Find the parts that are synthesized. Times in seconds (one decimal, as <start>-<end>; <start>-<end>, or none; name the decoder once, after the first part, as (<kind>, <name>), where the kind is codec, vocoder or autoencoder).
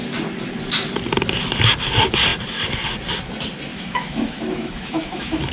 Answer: 3.7-5.5 (autoencoder, DAC-VAE)